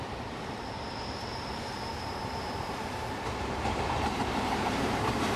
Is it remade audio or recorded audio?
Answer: remade